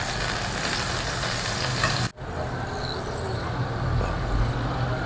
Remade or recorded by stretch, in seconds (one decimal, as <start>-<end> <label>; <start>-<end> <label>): 0.0-5.1 recorded